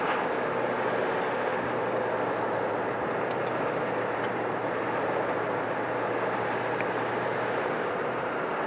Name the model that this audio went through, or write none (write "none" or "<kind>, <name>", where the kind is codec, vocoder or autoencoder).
none